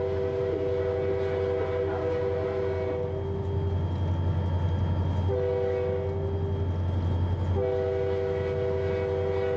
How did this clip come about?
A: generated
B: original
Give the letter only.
B